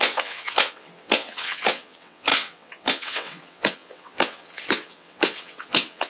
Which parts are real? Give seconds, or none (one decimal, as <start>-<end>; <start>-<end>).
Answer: none

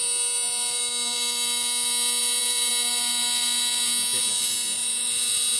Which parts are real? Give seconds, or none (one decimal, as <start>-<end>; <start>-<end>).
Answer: 0.0-2.2; 2.7-4.8